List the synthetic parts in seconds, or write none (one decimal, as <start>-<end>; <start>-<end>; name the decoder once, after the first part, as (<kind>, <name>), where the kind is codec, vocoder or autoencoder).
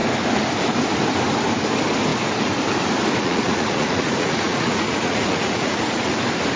3.2-6.1 (vocoder, Vocos)